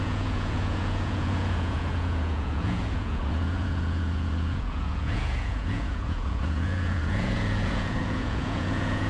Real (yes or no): no